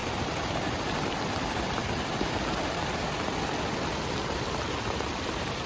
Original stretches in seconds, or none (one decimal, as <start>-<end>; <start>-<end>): 0.0-1.4; 1.8-5.2